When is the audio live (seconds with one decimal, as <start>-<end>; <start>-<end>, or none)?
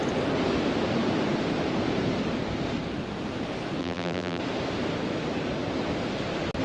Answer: 0.0-3.8; 4.4-6.6